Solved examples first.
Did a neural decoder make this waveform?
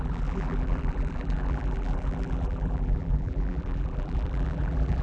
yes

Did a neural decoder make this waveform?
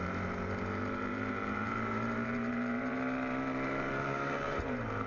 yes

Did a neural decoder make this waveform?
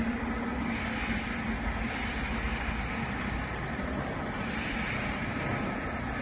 no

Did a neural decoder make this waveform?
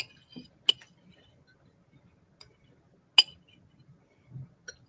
no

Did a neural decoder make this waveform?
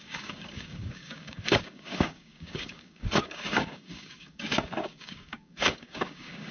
yes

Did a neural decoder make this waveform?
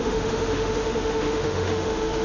yes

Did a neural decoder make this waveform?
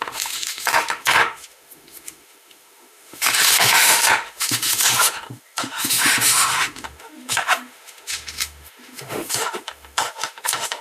yes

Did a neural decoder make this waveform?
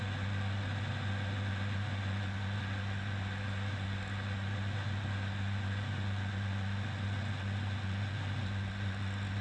no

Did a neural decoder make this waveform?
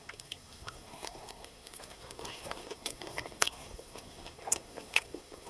yes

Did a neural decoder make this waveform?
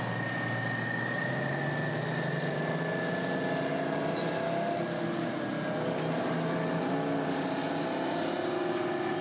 no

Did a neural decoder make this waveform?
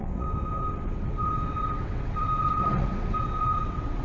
yes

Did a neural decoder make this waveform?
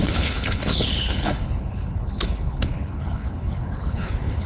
yes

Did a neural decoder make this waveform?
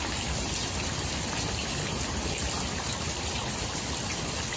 no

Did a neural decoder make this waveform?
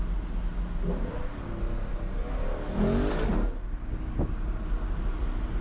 no